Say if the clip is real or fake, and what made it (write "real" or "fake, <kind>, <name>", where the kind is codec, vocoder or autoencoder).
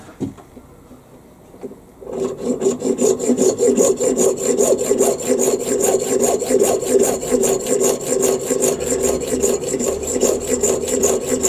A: real